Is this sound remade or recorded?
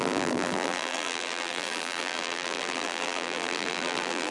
remade